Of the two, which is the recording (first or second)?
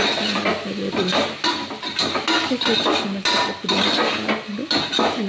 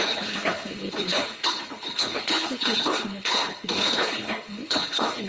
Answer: first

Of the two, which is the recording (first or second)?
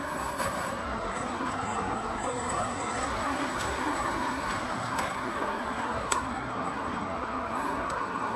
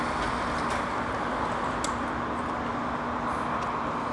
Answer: second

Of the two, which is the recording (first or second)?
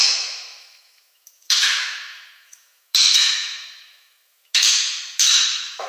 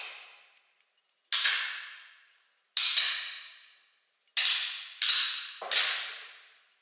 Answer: second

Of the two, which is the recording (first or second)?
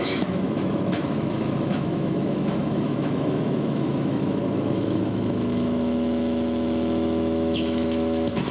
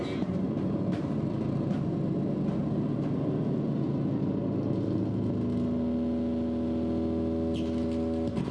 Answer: second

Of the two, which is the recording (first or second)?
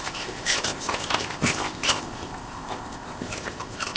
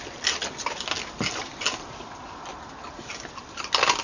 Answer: second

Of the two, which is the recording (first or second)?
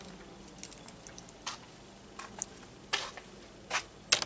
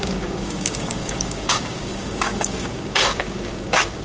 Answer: first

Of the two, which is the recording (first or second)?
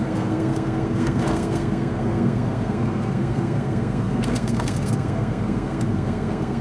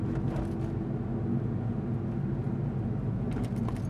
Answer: second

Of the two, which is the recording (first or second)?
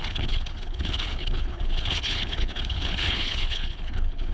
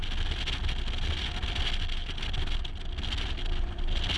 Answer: second